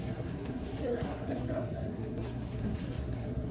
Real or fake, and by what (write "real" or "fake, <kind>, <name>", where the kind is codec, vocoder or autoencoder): fake, codec, SNAC